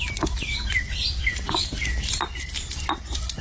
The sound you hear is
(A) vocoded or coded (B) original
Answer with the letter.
A